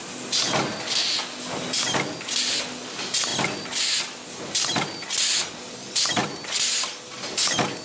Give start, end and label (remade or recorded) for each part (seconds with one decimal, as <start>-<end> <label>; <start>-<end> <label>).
0.0-7.8 recorded